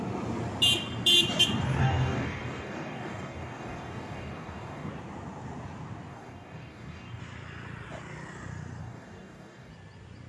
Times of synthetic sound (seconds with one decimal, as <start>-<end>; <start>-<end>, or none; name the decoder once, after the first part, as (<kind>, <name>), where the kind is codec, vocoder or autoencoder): 1.8-4.9 (codec, DAC); 6.1-7.2; 8.8-9.7